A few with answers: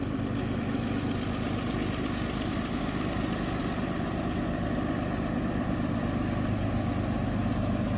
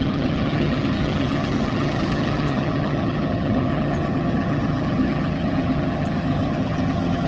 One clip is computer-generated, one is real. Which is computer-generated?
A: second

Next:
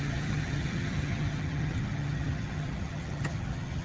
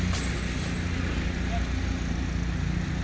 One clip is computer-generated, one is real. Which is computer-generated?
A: first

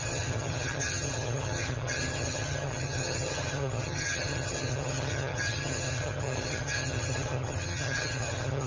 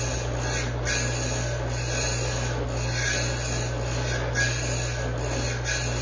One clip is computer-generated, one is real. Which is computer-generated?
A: first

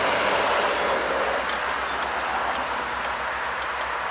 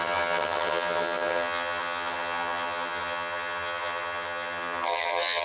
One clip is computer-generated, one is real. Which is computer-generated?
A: second